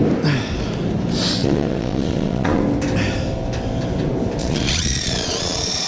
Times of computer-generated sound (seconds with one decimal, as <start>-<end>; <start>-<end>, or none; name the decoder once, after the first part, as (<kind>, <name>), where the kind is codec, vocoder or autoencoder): 1.4-2.6 (vocoder, Vocos); 4.4-5.9